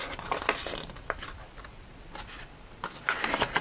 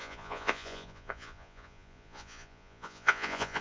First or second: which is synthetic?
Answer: second